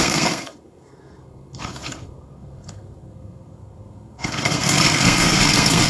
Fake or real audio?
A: fake